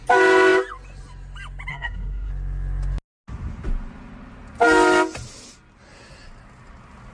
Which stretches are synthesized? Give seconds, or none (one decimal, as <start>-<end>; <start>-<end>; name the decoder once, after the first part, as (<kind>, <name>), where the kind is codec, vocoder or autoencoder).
1.7-2.3 (codec, SNAC)